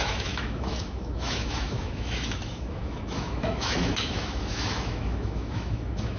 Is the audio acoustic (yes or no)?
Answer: no